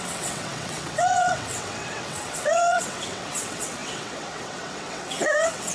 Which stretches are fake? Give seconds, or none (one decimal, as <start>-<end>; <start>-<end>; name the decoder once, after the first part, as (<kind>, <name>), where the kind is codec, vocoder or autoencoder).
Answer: 0.0-5.7 (vocoder, WaveNeXt)